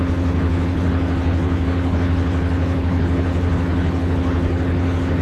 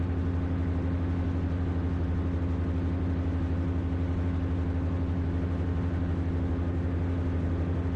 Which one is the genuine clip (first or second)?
second